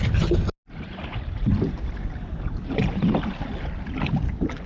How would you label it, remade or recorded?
recorded